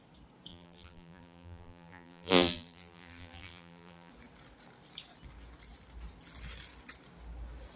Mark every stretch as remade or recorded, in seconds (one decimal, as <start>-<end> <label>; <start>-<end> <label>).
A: 0.0-0.5 recorded; 0.5-4.1 remade; 4.1-7.8 recorded